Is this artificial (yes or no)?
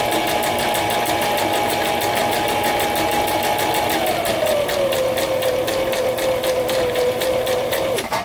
no